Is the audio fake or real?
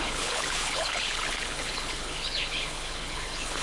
fake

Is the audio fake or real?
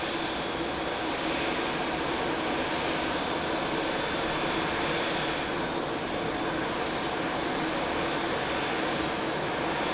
real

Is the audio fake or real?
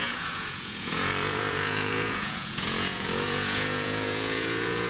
fake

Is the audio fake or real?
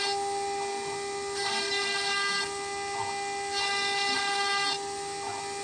real